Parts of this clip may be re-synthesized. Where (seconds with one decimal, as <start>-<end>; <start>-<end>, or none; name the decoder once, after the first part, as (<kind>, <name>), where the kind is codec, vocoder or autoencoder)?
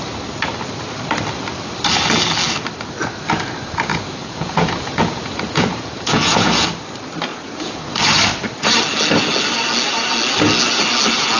3.9-6.8 (vocoder, Vocos); 7.3-7.8